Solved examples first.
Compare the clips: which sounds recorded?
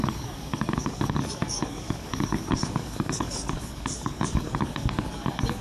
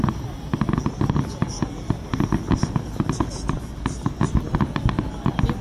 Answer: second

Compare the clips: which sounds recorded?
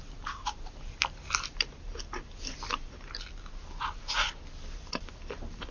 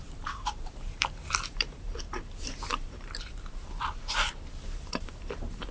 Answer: first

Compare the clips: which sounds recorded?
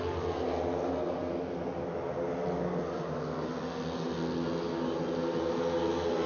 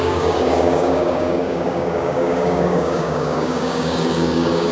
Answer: first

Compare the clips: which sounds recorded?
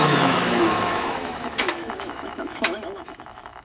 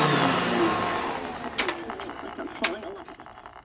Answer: second